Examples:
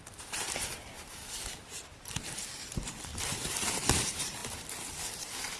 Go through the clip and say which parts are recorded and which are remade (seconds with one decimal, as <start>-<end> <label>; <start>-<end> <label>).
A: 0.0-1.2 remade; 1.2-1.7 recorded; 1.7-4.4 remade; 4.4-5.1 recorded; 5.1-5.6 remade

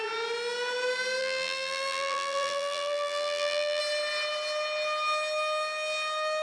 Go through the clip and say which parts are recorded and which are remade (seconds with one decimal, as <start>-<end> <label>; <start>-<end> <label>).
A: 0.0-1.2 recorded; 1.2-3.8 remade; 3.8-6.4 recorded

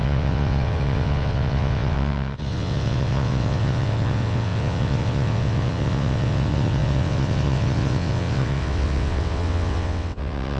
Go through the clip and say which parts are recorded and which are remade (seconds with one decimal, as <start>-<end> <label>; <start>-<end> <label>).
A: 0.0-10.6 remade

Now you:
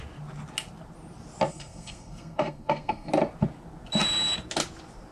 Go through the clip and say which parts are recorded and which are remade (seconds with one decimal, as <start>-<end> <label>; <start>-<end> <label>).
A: 0.0-1.5 recorded; 1.5-3.1 remade; 3.1-5.1 recorded

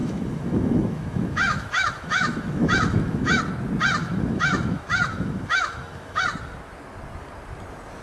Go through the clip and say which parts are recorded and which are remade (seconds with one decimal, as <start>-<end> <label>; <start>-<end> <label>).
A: 0.0-3.4 remade; 3.4-4.0 recorded; 4.0-6.2 remade; 6.2-8.0 recorded

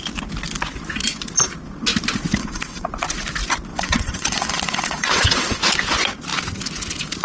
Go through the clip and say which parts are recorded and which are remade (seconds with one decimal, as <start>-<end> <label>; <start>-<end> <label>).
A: 0.0-2.4 recorded; 2.4-2.9 remade; 2.9-3.7 recorded; 3.7-5.6 remade; 5.6-7.2 recorded

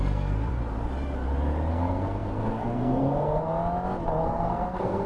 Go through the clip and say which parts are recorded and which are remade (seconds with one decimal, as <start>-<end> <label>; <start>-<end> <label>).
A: 0.0-0.5 remade; 0.5-1.7 recorded; 1.7-3.5 remade; 3.5-4.2 recorded; 4.2-5.1 remade